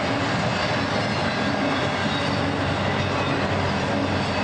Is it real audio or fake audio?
real